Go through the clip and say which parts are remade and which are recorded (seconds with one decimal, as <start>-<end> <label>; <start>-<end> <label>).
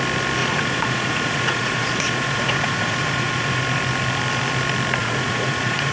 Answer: 0.0-0.4 recorded; 0.4-3.6 remade; 3.6-5.0 recorded; 5.0-5.9 remade